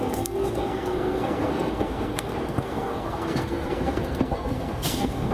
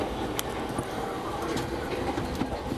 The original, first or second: second